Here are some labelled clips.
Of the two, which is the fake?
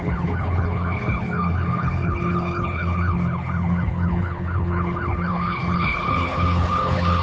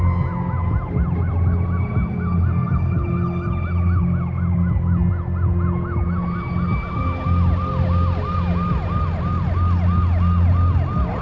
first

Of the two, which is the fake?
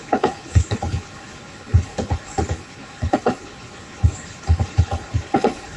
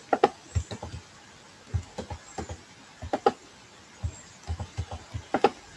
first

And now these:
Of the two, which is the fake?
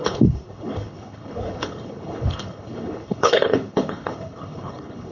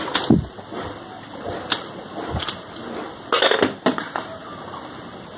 first